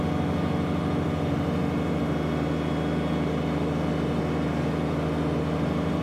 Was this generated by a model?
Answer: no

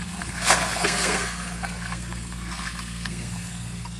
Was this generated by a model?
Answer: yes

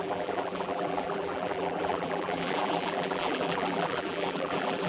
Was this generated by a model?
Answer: yes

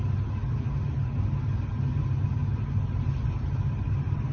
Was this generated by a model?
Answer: no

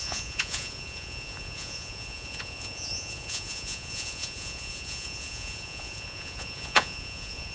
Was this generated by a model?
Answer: yes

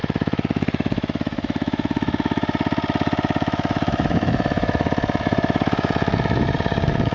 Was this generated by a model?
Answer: yes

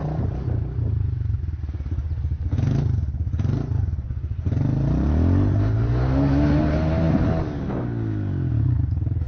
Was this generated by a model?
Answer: no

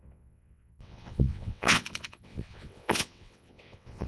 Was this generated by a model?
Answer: yes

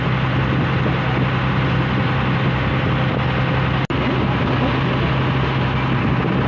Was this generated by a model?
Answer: no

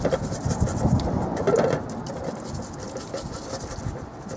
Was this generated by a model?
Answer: no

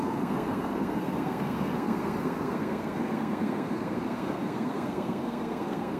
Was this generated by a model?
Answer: yes